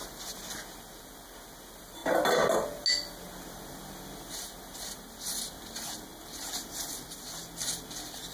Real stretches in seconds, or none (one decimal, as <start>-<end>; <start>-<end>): 0.0-8.3